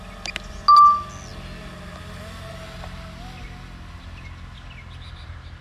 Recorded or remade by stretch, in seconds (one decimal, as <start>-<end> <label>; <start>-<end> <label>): 0.0-5.6 recorded